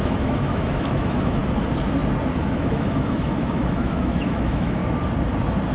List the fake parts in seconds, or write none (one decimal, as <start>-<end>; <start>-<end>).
0.0-1.4; 2.4-4.8